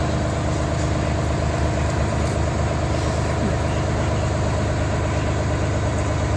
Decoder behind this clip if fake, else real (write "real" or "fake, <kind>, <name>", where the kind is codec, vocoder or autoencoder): real